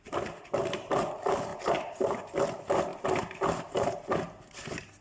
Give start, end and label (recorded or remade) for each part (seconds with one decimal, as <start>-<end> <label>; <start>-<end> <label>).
0.0-1.5 recorded; 1.5-2.2 remade; 2.2-2.9 recorded; 2.9-3.7 remade; 3.7-5.0 recorded